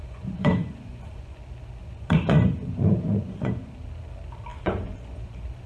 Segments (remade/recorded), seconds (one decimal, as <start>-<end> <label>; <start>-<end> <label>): 0.0-1.4 remade; 1.4-1.8 recorded; 1.8-3.7 remade; 3.7-4.5 recorded; 4.5-5.3 remade; 5.3-5.7 recorded